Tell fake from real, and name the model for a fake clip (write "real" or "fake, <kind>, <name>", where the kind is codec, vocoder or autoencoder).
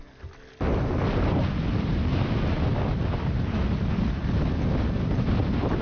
real